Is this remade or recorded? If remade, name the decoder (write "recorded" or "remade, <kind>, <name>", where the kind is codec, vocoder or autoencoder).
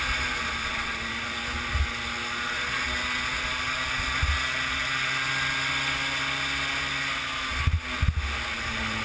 recorded